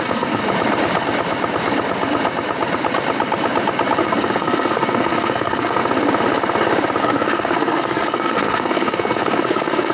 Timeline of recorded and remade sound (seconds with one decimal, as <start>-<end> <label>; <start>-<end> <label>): 0.0-0.4 remade; 0.4-4.0 recorded; 4.0-5.8 remade; 5.8-7.0 recorded; 7.0-9.9 remade